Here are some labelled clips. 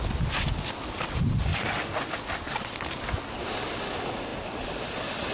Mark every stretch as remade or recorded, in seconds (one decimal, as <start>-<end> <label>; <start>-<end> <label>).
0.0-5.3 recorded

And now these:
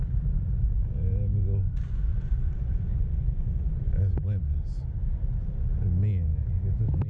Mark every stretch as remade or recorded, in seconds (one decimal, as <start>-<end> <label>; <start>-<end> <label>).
0.0-2.1 recorded; 2.1-4.4 remade; 4.4-7.1 recorded

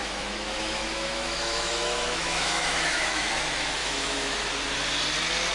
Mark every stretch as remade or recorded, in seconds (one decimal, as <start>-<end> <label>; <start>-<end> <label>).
0.0-3.3 remade; 3.3-3.8 recorded; 3.8-4.5 remade; 4.5-5.5 recorded